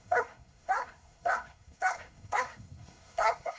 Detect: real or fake fake